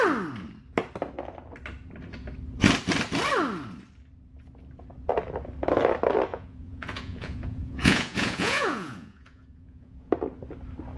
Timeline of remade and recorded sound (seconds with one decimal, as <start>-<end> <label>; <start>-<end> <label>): 0.0-6.3 recorded; 6.3-10.1 remade; 10.1-11.0 recorded